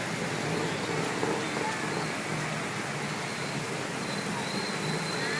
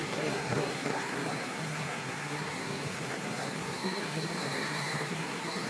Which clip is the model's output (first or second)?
second